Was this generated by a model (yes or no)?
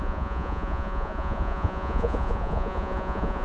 yes